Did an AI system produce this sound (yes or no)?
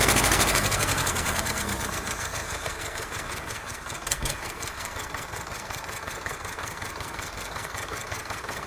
yes